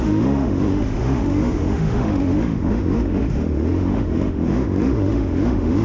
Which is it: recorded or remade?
remade